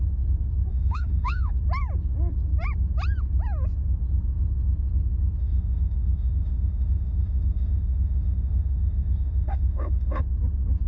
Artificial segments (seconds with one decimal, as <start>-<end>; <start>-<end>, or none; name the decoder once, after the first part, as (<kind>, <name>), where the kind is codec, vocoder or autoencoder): 0.7-1.5 (autoencoder, DAC-VAE); 5.4-10.2